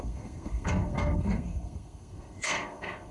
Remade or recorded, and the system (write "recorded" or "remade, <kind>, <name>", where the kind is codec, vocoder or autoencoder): remade, codec, SNAC